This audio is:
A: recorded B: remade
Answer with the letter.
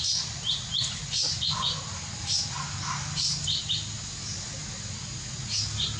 A